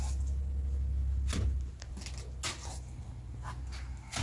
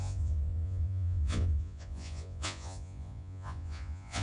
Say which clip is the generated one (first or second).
second